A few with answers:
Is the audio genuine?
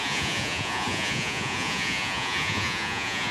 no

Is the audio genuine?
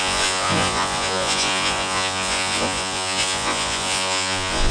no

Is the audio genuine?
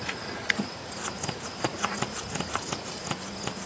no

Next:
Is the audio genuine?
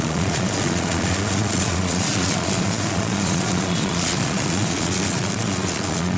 no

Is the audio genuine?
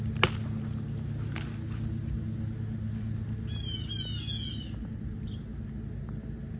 yes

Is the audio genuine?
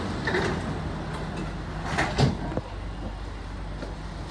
yes